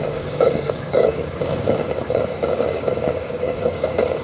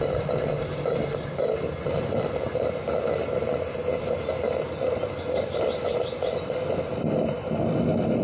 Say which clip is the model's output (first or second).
first